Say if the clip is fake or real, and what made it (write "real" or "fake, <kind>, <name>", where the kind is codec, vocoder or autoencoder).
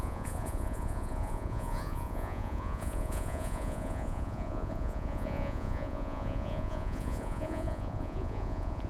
fake, vocoder, Vocos